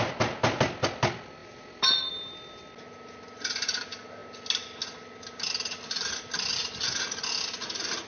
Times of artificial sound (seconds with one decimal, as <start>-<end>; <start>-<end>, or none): none